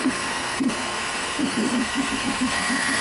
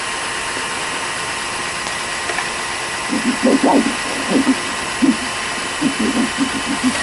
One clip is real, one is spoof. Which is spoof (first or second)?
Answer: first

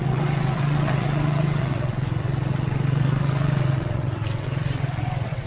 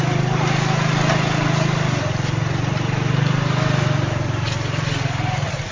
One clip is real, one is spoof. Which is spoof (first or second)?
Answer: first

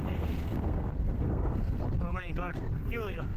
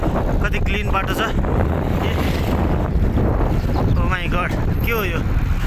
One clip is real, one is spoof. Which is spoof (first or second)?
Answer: first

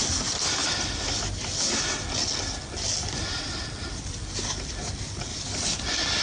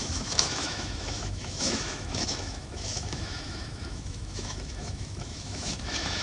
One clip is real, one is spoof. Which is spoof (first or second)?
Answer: second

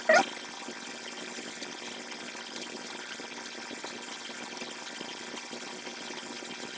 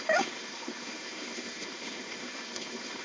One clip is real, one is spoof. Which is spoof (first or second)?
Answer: second